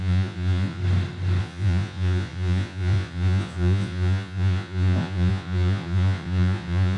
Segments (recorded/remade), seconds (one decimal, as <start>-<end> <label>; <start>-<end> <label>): 0.0-0.8 remade; 0.8-1.4 recorded; 1.4-7.0 remade